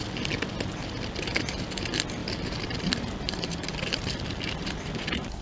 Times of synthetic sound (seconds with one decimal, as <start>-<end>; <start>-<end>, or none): 2.2-5.4